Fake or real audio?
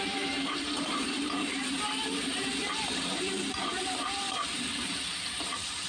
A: fake